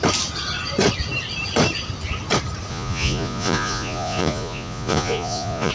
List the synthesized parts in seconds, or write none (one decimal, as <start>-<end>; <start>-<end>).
2.7-5.7